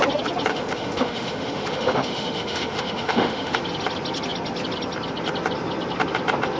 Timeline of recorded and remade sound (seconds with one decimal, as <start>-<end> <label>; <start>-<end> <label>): 0.0-0.5 recorded; 0.5-3.6 remade; 3.6-6.6 recorded